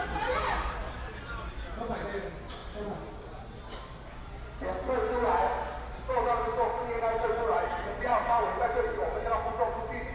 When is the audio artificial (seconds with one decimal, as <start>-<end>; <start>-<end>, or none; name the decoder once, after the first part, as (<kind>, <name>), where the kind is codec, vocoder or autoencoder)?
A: 0.0-0.8 (vocoder, BigVGAN v2); 1.8-4.8; 7.0-10.1